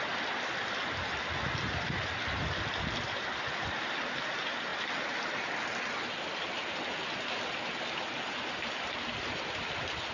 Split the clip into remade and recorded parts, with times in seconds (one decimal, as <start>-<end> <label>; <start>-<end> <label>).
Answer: 0.0-10.1 recorded